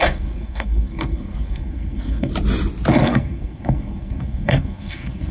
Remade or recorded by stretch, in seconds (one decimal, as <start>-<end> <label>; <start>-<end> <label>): 0.0-2.3 remade; 2.3-2.9 recorded; 2.9-5.3 remade